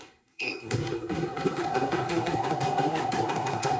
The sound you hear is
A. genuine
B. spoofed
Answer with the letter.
B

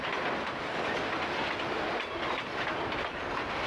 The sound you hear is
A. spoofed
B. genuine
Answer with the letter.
B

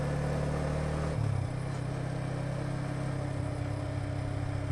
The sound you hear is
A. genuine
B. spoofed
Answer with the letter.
A